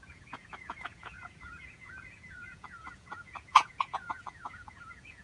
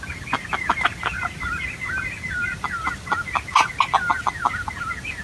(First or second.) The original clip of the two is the second